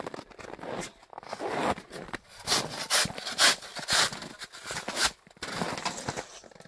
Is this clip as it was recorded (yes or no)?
yes